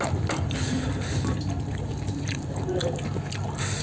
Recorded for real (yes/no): yes